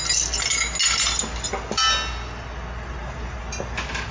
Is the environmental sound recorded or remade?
recorded